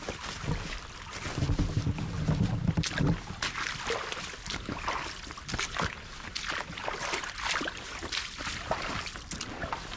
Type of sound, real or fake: real